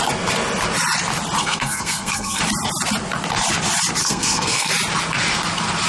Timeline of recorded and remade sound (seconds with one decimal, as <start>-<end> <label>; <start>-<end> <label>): 0.0-1.4 recorded; 1.4-2.4 remade; 2.4-4.0 recorded; 4.0-4.7 remade; 4.7-5.9 recorded